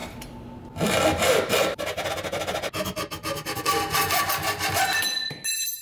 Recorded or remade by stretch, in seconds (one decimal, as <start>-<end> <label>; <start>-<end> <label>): 0.0-5.8 recorded